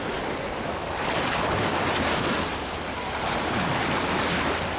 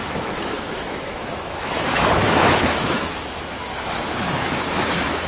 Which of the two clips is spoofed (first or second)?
second